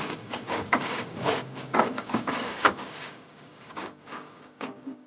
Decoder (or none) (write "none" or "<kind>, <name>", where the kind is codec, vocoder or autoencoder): codec, DAC